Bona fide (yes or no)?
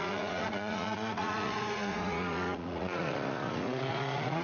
no